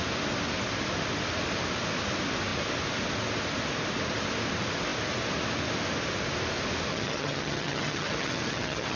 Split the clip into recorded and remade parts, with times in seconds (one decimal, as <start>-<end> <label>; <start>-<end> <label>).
0.0-6.9 recorded; 6.9-9.0 remade